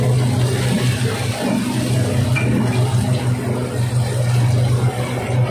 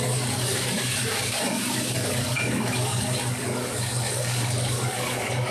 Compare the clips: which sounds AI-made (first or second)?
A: second